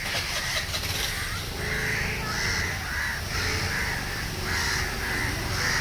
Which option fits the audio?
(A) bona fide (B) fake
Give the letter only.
A